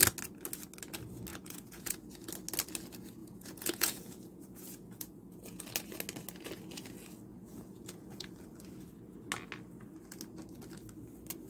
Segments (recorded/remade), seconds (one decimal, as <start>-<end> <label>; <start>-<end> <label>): 0.0-1.3 recorded; 1.3-2.1 remade; 2.1-3.2 recorded; 3.2-5.6 remade; 5.6-7.3 recorded; 7.3-8.3 remade; 8.3-11.5 recorded